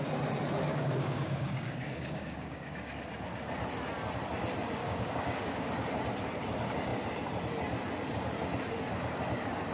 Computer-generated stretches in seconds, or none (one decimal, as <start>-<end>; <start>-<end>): 0.7-2.9; 4.8-5.7